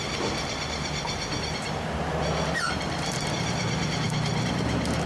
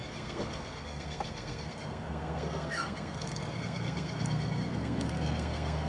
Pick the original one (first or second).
first